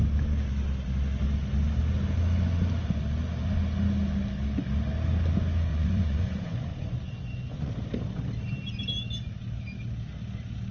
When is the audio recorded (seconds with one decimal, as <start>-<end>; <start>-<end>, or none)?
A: 0.0-5.7; 7.7-10.7